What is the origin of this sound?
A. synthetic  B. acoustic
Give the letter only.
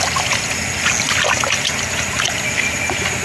B